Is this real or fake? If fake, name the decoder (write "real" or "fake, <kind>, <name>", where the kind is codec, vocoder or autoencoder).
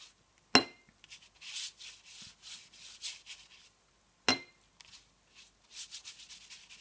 real